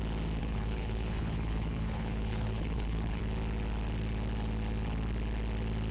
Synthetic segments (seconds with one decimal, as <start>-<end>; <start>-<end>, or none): 0.4-3.2